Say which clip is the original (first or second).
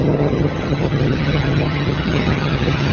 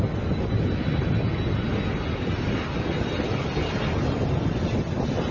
second